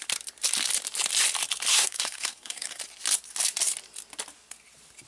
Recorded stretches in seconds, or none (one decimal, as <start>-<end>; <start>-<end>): 0.0-1.7; 2.8-5.1